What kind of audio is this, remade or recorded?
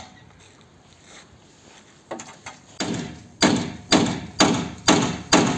recorded